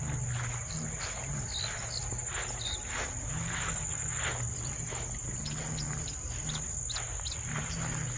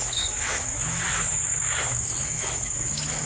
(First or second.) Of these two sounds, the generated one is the second